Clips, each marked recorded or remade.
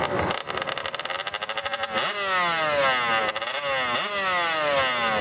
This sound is recorded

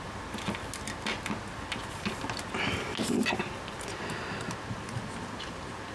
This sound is recorded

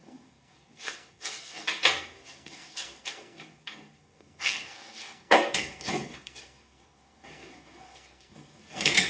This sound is remade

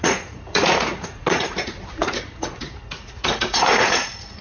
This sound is remade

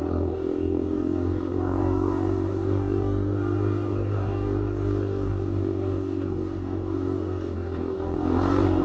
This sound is remade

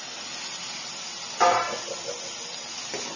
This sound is recorded